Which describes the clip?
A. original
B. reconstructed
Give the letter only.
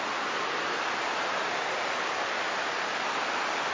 A